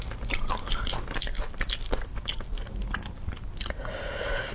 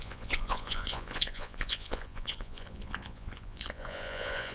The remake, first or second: second